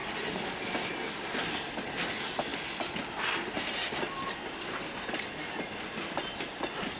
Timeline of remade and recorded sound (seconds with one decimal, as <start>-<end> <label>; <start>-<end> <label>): 0.0-7.0 recorded